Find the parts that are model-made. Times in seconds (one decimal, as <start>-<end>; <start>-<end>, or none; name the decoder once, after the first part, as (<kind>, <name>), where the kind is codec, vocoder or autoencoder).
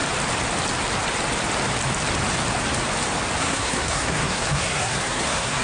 3.4-5.6 (codec, SNAC)